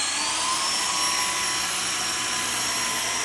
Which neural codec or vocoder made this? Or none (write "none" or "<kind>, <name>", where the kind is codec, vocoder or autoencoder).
none